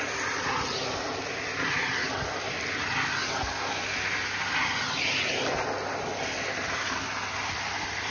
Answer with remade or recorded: recorded